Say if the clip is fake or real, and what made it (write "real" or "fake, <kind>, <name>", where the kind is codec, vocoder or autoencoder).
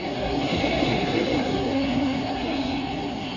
fake, codec, SNAC